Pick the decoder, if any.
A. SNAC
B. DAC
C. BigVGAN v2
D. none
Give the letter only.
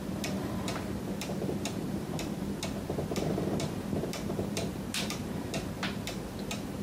C